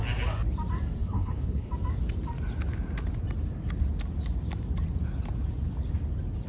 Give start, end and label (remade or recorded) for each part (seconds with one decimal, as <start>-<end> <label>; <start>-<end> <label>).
0.0-1.0 recorded; 1.0-1.7 remade; 1.7-6.5 recorded